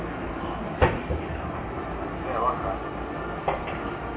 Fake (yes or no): no